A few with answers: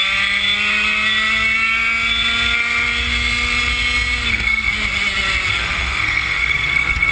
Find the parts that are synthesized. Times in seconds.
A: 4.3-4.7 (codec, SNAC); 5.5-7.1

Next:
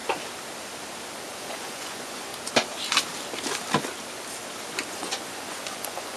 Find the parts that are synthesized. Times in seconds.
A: 1.1-2.3 (vocoder, Vocos); 4.9-6.2

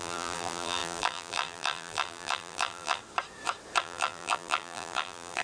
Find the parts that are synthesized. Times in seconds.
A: 0.0-3.0 (vocoder, BigVGAN v2); 3.8-5.4